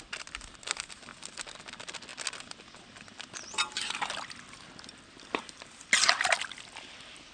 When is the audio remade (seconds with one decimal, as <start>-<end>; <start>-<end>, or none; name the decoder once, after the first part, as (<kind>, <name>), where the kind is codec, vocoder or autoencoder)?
none